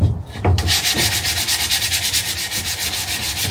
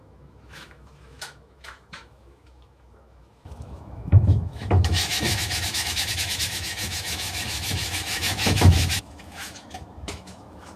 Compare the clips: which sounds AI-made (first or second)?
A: second